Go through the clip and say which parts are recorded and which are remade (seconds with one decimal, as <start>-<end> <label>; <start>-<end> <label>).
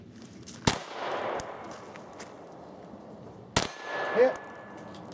0.0-5.1 recorded